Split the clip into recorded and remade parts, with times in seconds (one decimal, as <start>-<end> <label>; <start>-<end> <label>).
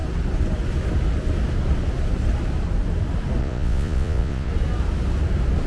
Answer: 0.0-3.4 recorded; 3.4-4.5 remade; 4.5-5.7 recorded